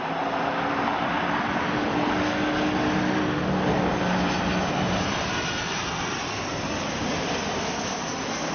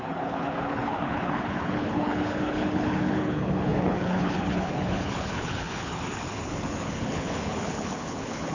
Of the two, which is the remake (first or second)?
second